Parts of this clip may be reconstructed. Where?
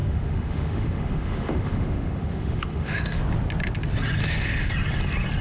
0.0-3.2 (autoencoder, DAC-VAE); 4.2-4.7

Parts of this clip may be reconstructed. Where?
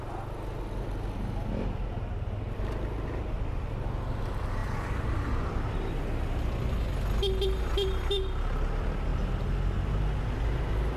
none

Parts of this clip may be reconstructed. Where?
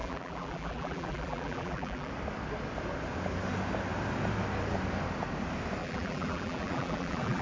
0.0-2.1 (vocoder, BigVGAN v2); 5.8-7.4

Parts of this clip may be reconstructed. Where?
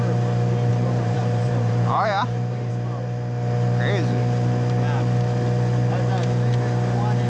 0.7-2.7 (vocoder, BigVGAN v2)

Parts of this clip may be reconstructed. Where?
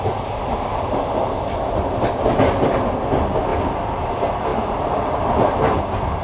4.5-5.8 (vocoder, BigVGAN v2)